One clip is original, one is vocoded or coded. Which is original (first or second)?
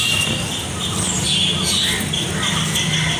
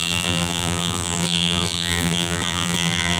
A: first